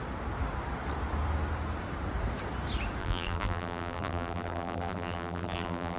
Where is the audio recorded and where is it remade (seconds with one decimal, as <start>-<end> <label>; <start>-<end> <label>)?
0.0-3.0 recorded; 3.0-6.0 remade